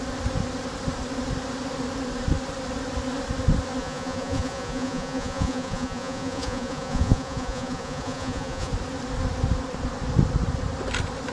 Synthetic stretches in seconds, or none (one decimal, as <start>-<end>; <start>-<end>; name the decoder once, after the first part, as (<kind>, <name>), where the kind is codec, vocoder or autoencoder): 3.8-8.7 (vocoder, Vocos)